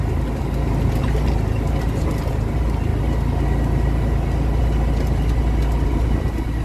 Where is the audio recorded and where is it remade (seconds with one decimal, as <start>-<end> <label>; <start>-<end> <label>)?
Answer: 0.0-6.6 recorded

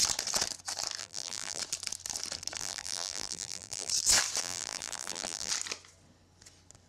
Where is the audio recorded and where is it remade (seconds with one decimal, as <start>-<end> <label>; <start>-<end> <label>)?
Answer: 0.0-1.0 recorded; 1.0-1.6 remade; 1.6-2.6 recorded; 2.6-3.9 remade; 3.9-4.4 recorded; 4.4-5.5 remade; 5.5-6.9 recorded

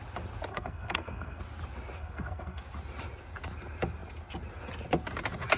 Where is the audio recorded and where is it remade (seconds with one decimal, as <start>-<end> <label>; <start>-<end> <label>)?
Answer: 0.0-0.5 recorded; 0.5-1.4 remade; 1.4-2.0 recorded; 2.0-2.6 remade; 2.6-5.6 recorded

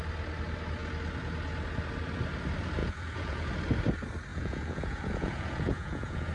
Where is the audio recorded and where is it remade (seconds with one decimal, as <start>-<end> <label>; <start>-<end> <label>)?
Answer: 0.0-2.8 recorded; 2.8-3.5 remade; 3.5-4.3 recorded; 4.3-6.3 remade

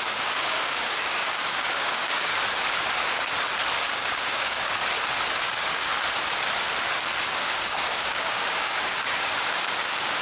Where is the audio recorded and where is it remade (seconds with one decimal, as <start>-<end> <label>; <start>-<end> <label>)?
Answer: 0.0-2.3 remade; 2.3-3.8 recorded; 3.8-4.8 remade; 4.8-5.4 recorded; 5.4-5.9 remade; 5.9-7.2 recorded; 7.2-10.2 remade